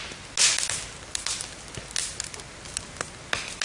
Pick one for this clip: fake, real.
real